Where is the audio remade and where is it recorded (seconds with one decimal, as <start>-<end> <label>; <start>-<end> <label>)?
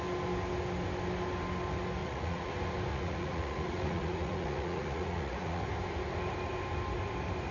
0.0-2.0 recorded; 2.0-2.5 remade; 2.5-2.9 recorded; 2.9-5.6 remade; 5.6-7.5 recorded